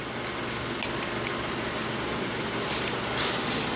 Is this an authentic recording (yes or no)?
yes